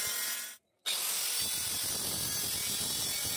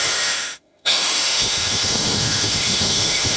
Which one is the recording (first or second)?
first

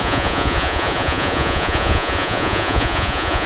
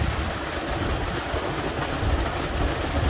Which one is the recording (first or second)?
second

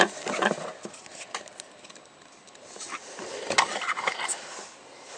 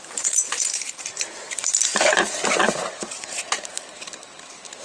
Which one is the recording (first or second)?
first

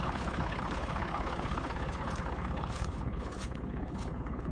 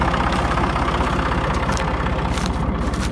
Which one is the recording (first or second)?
second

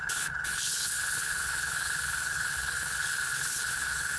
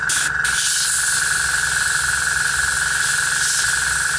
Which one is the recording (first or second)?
second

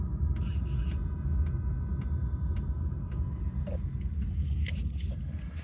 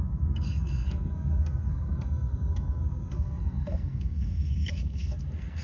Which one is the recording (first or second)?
first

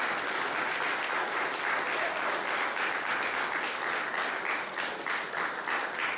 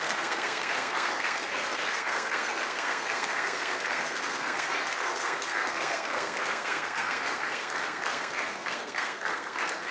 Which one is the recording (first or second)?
first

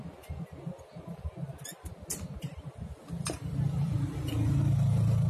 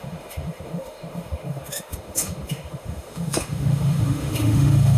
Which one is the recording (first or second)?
first